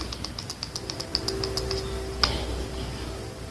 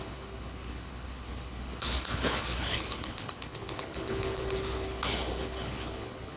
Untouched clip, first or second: first